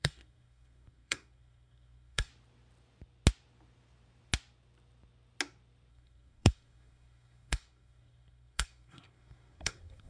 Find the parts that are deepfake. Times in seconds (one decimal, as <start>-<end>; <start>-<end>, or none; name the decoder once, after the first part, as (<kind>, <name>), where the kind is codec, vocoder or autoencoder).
0.0-2.3 (codec, SNAC); 5.9-10.1